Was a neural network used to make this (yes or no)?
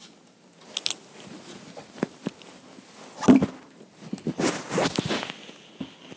no